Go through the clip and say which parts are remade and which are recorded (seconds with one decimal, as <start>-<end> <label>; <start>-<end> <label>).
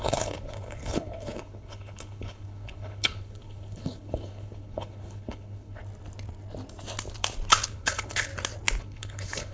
0.0-5.8 remade; 5.8-7.7 recorded; 7.7-8.3 remade; 8.3-8.8 recorded; 8.8-9.5 remade